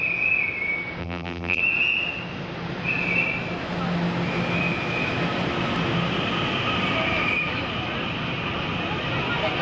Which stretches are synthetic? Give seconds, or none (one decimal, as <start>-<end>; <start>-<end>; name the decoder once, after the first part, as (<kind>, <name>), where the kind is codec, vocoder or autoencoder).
1.0-1.6 (vocoder, BigVGAN v2)